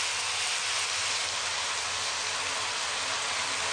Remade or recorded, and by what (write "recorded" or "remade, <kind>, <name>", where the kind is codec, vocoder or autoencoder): recorded